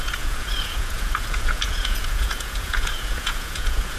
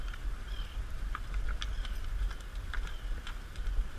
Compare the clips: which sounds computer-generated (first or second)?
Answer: first